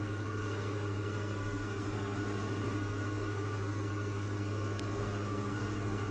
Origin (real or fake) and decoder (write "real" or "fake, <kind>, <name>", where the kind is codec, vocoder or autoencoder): fake, codec, SNAC